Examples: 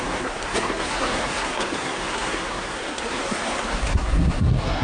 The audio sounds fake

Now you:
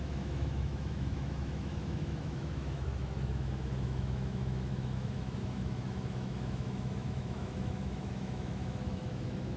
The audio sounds fake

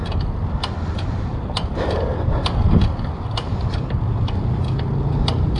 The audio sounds real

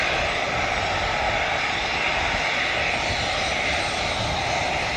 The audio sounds real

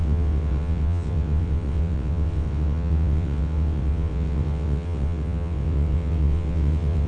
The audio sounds fake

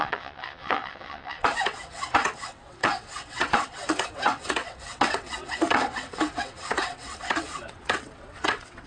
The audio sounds fake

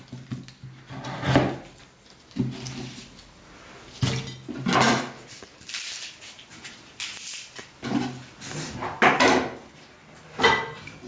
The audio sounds real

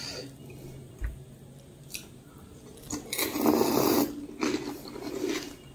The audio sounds real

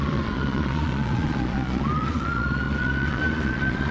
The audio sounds fake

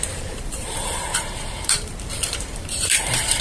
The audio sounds fake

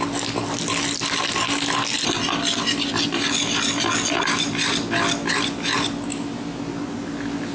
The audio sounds real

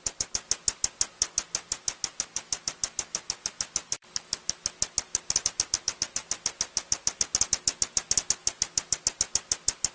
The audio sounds real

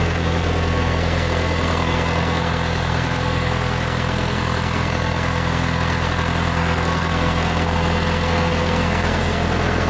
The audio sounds fake